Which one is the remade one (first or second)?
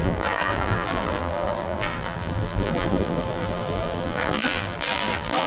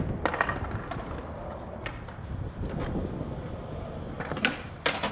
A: first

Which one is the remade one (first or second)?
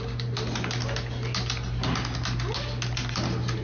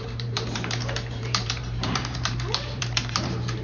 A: second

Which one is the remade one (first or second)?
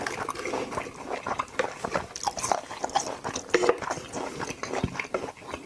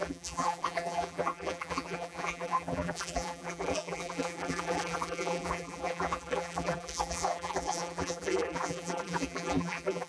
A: second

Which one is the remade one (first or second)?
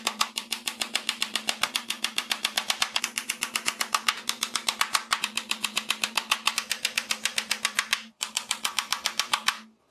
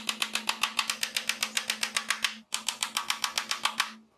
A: first